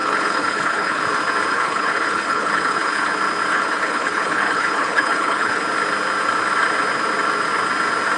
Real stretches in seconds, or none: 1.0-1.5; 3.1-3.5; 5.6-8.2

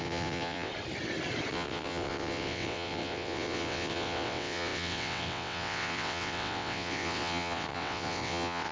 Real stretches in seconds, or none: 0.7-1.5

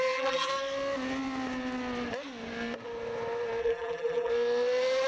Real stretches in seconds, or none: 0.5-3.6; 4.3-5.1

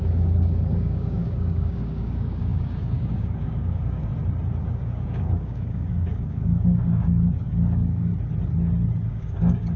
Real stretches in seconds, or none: 4.1-4.6; 8.1-9.1